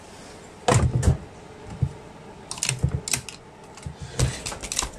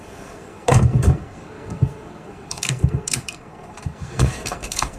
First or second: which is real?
first